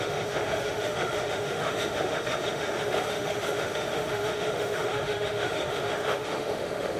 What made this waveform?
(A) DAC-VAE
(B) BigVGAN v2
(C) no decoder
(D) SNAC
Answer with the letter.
A